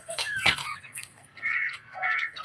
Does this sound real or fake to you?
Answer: fake